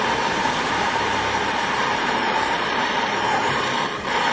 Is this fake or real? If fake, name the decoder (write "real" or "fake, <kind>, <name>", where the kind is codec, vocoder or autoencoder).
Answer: fake, vocoder, BigVGAN v2